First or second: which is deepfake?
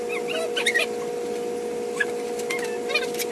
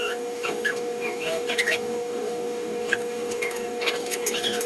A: second